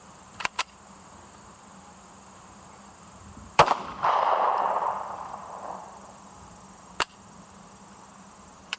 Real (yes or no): no